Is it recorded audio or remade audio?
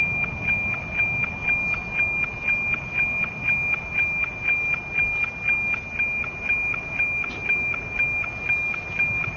recorded